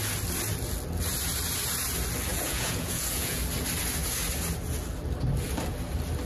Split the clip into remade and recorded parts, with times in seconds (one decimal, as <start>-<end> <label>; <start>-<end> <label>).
0.0-2.3 recorded; 2.3-3.4 remade; 3.4-6.3 recorded

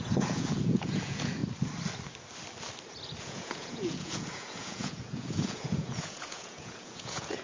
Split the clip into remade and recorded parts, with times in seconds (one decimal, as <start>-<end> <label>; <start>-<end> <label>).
0.0-1.4 remade; 1.4-3.2 recorded; 3.2-7.4 remade

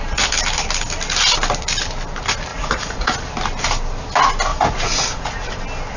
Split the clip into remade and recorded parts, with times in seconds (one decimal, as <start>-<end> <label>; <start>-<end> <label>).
0.0-2.5 recorded; 2.5-3.1 remade; 3.1-4.5 recorded; 4.5-5.6 remade; 5.6-6.0 recorded

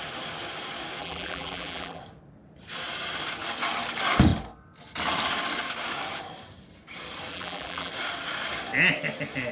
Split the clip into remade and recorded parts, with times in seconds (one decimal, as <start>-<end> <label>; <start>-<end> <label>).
0.0-1.0 recorded; 1.0-2.0 remade; 2.0-7.3 recorded; 7.3-7.9 remade; 7.9-9.5 recorded